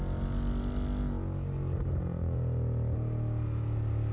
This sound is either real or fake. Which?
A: real